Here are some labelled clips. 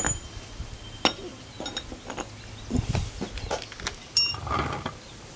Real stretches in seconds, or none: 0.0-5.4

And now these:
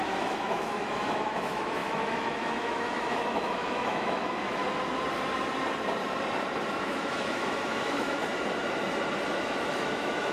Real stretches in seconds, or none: 4.6-6.7; 8.2-9.4

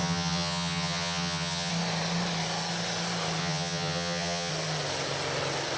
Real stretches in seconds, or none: 1.7-3.4; 4.5-5.8

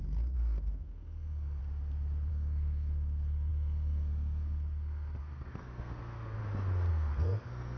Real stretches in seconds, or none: 1.6-2.3; 6.4-6.9

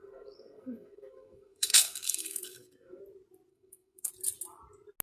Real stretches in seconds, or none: 3.0-3.5; 4.1-5.0

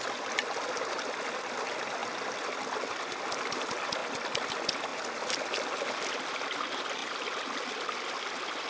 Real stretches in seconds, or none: 0.0-8.7

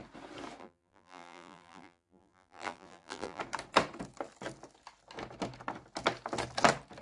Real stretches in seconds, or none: 0.0-0.6; 3.4-7.0

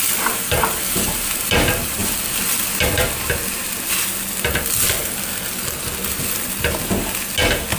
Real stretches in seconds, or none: 0.0-7.8